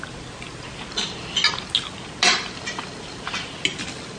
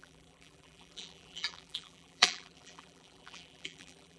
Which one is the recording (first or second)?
first